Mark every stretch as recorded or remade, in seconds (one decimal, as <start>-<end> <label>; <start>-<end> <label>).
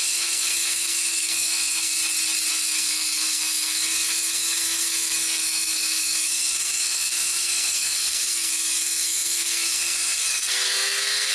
0.0-2.0 remade; 2.0-2.5 recorded; 2.5-11.3 remade